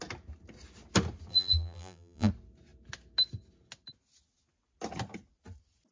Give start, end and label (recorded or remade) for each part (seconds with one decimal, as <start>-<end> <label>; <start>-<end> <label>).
0.0-1.3 recorded; 1.3-2.3 remade; 2.3-5.9 recorded